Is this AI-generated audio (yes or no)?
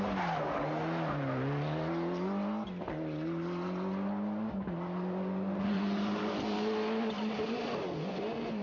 no